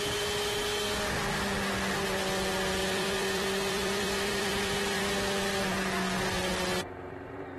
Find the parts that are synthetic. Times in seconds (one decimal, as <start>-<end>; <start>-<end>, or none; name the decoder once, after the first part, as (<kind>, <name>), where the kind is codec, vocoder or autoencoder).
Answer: 2.8-5.0 (vocoder, BigVGAN v2)